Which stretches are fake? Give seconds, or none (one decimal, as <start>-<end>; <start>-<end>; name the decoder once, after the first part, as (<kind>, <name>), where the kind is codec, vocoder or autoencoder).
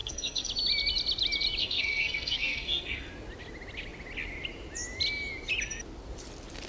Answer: 0.0-0.5 (codec, SNAC); 1.6-3.1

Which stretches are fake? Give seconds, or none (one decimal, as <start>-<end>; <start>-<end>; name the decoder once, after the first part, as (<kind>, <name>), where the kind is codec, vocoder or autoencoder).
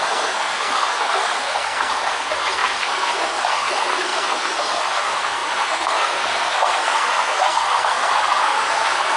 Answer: 0.0-9.2 (codec, SNAC)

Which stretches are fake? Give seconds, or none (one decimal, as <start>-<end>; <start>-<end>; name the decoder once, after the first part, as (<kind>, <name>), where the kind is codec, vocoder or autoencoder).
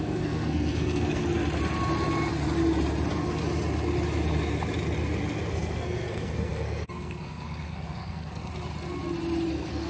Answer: 0.0-1.2 (codec, SNAC); 5.5-8.5; 9.5-9.9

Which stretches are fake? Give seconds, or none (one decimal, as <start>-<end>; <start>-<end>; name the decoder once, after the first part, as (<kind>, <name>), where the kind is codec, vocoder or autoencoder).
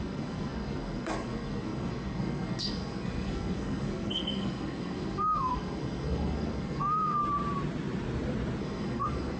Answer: 0.0-7.2 (codec, SNAC); 8.6-9.4